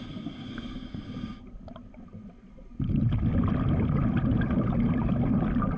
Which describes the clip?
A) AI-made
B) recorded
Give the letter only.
B